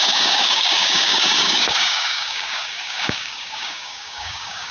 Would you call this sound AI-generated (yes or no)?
yes